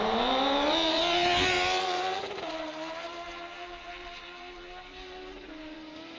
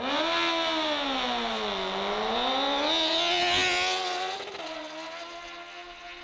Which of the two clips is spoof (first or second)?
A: first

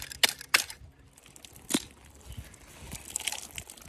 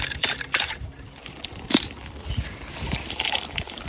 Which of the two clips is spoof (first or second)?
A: second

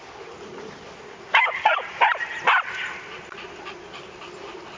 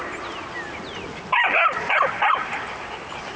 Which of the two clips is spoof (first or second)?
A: first